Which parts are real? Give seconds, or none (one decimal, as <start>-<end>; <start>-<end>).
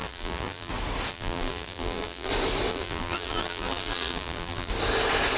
0.7-1.1; 2.3-2.7; 4.7-5.4